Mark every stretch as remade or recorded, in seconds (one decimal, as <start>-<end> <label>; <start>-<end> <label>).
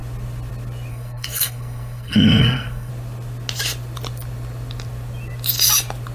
0.0-0.9 recorded; 0.9-2.9 remade; 2.9-6.1 recorded